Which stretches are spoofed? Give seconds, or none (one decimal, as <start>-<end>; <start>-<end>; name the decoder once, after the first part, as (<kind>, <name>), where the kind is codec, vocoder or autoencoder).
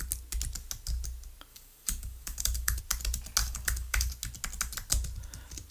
1.5-2.8 (codec, DAC); 3.4-4.1